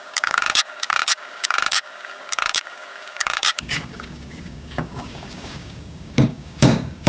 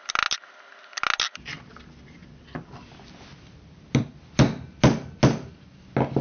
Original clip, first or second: second